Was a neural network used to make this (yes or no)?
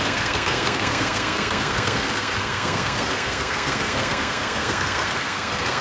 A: yes